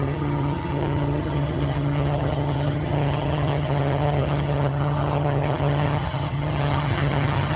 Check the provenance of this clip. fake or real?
fake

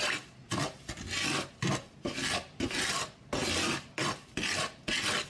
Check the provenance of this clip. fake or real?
real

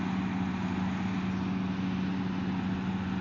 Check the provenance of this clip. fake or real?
real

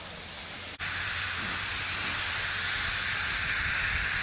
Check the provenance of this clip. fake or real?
real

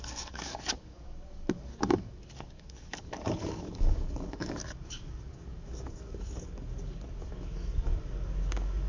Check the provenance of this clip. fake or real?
fake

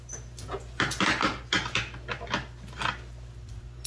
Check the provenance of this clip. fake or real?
real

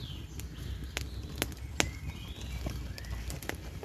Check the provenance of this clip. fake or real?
real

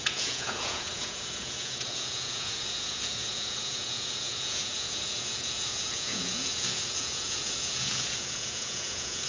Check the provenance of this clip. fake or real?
fake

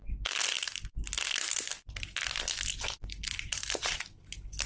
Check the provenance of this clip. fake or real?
real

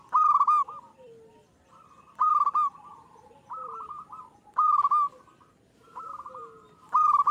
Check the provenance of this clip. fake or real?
real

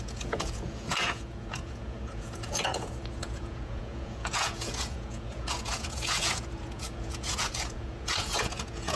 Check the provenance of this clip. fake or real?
fake